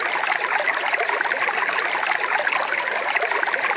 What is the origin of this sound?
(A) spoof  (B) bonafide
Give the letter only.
B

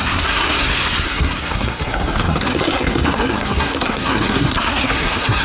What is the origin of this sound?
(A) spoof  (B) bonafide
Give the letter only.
A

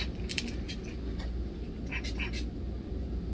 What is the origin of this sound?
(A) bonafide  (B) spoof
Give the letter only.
A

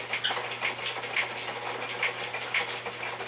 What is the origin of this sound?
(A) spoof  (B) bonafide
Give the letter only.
B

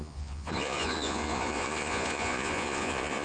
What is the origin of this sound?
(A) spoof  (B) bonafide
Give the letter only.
A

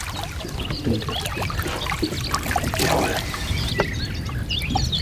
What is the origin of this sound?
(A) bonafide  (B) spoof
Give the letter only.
A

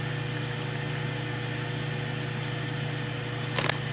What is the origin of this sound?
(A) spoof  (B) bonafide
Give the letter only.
B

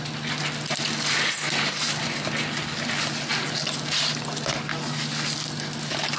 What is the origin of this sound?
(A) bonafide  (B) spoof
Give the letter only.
A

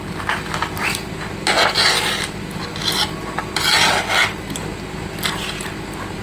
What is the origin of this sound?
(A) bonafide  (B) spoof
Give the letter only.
A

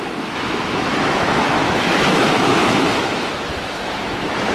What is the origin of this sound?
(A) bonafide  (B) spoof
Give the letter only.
B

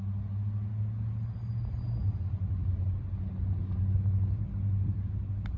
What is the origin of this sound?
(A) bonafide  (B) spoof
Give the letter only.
A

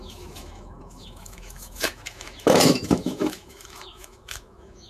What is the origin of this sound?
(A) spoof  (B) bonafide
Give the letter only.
A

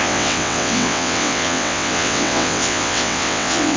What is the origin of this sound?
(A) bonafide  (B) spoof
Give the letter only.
B